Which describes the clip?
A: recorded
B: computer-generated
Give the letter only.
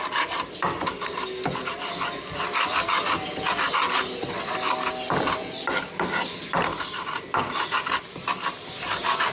A